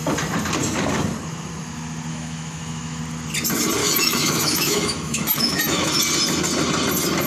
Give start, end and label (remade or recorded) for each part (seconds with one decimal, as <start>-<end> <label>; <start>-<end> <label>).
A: 0.0-2.1 recorded; 2.1-3.0 remade; 3.0-3.8 recorded; 3.8-6.0 remade; 6.0-7.3 recorded